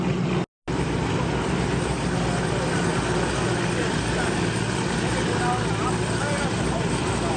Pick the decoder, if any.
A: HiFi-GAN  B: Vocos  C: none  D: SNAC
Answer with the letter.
C